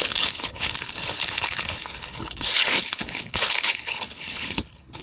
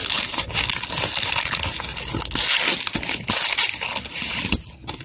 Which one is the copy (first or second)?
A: first